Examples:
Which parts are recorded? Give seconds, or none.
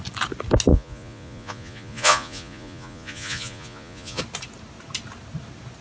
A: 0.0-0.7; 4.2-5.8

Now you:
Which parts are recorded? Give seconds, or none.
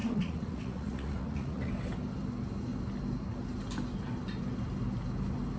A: 1.7-5.6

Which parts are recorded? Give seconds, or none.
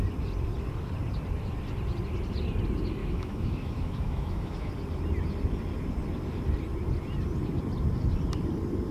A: 0.0-3.0; 4.7-8.9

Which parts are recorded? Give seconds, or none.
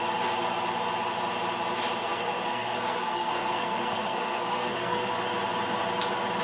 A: 0.0-2.0; 5.1-6.4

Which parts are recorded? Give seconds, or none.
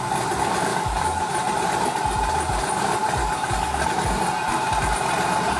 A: 0.0-0.7; 1.3-3.2; 3.8-5.6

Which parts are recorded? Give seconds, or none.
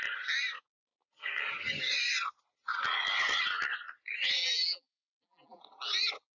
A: 0.0-4.4; 5.6-6.3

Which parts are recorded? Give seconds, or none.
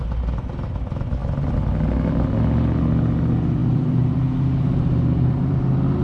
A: 0.0-3.6; 5.6-6.0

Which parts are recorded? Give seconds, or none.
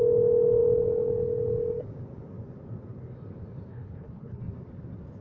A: 0.0-3.7; 4.4-5.2